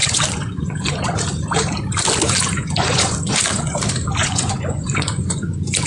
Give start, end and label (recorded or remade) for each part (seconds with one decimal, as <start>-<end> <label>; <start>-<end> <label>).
0.0-1.0 remade; 1.0-2.2 recorded; 2.2-3.8 remade; 3.8-4.2 recorded; 4.2-5.9 remade